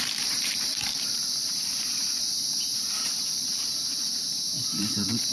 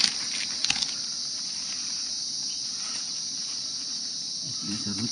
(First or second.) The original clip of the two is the second